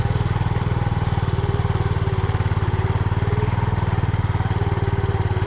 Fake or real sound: fake